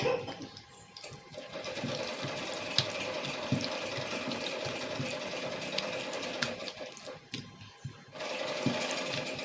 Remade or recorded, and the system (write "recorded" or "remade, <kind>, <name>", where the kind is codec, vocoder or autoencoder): recorded